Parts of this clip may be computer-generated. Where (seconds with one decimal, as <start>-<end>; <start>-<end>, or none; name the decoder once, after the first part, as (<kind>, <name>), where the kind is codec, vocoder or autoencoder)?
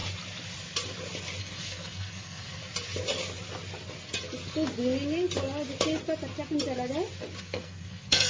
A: 1.4-2.6 (codec, SNAC); 7.4-8.3